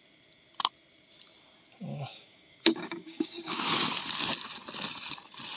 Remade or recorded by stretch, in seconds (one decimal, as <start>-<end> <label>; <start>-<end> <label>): 0.0-1.9 recorded; 1.9-3.7 remade; 3.7-5.6 recorded